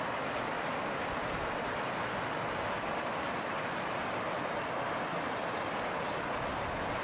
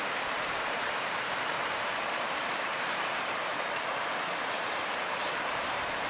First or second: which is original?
first